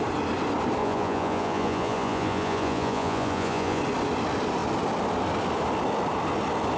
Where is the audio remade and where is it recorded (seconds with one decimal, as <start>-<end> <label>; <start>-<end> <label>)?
0.0-0.8 recorded; 0.8-3.8 remade; 3.8-6.8 recorded